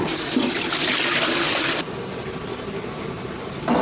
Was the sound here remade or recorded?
recorded